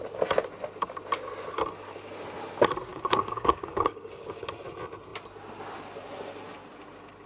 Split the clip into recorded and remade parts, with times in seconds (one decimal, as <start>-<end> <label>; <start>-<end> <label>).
0.0-2.9 recorded; 2.9-4.4 remade; 4.4-7.3 recorded